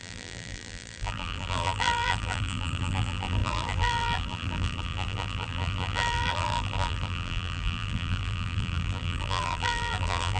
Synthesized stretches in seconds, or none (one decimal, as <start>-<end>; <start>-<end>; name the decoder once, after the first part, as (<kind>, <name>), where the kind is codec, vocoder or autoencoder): 0.0-10.4 (vocoder, BigVGAN v2)